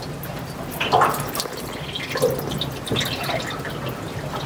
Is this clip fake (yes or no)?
no